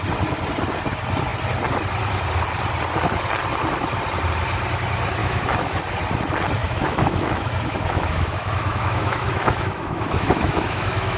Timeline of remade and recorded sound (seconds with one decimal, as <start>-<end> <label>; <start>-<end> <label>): 0.0-5.2 recorded; 5.2-5.8 remade; 5.8-6.6 recorded; 6.6-11.2 remade